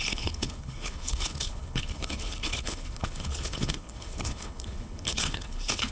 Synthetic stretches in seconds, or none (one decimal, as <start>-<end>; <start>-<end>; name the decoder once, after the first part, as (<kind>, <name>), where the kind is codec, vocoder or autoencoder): 0.0-5.9 (codec, HILCodec)